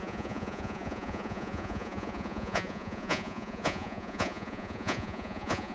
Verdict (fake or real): fake